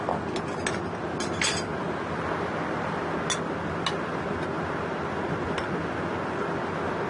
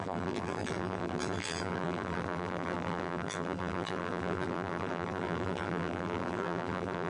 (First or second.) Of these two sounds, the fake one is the second